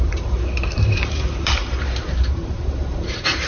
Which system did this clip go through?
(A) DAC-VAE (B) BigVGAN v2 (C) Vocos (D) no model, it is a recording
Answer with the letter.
B